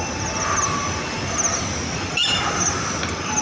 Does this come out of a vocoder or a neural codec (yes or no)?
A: no